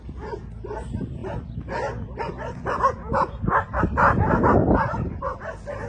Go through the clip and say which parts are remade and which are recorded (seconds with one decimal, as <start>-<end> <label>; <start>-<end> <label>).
0.0-4.6 recorded; 4.6-5.4 remade; 5.4-5.9 recorded